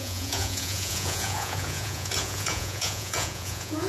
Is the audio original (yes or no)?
no